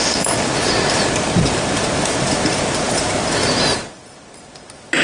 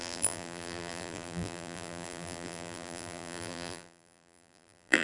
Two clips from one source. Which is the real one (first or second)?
first